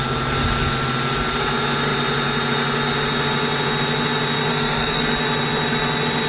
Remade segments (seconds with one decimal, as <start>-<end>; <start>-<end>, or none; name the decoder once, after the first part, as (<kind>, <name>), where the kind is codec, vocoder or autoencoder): 4.5-5.0 (codec, SNAC)